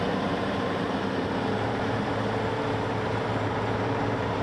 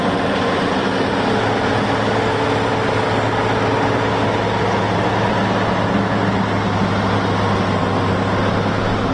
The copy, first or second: first